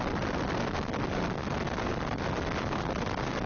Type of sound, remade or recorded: recorded